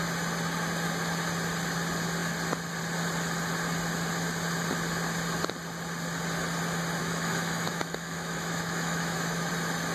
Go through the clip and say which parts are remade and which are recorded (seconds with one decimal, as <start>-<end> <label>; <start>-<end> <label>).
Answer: 0.0-7.0 recorded; 7.0-9.5 remade; 9.5-9.9 recorded